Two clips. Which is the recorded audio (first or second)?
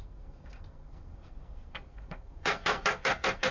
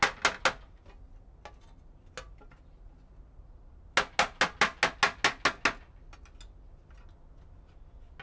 second